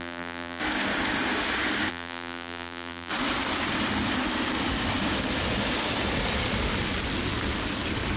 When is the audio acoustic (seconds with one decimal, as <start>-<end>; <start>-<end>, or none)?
0.6-1.9; 3.1-8.2